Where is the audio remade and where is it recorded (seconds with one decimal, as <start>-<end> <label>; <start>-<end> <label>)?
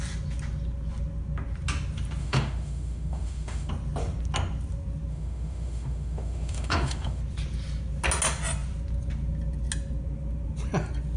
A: 0.0-2.2 recorded; 2.2-3.7 remade; 3.7-5.1 recorded; 5.1-7.2 remade; 7.2-11.2 recorded